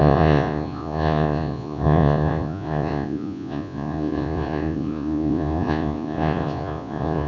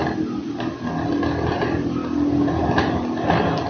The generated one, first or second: first